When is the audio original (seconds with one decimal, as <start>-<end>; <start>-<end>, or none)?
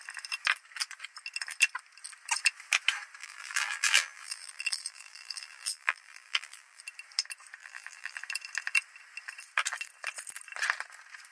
0.0-3.2; 6.8-7.6; 8.2-11.3